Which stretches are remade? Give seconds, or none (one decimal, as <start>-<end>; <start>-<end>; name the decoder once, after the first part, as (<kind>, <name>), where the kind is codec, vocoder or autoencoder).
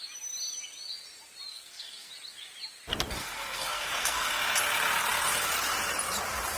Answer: 1.5-2.1 (codec, SNAC); 3.2-4.4